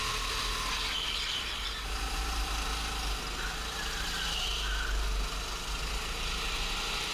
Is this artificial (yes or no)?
no